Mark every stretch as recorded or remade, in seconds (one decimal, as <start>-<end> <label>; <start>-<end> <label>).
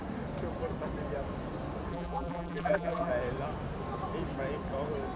0.0-1.9 recorded; 1.9-3.1 remade; 3.1-5.2 recorded